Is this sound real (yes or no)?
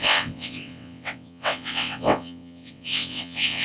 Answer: no